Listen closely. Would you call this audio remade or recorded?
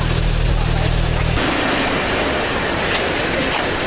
recorded